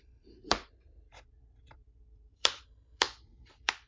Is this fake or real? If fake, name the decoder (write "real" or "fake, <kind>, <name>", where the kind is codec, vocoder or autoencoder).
fake, vocoder, BigVGAN v2